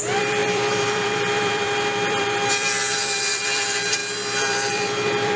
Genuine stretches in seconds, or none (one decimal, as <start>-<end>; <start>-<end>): none